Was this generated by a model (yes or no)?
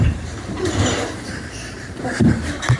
yes